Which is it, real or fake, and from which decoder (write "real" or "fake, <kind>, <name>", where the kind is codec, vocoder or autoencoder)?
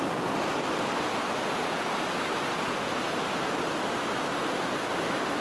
real